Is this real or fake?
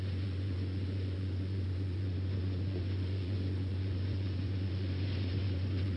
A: fake